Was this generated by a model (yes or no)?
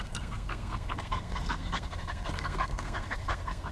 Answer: yes